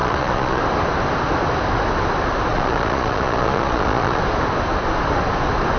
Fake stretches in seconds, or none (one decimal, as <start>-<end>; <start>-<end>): 0.0-0.6; 2.5-4.2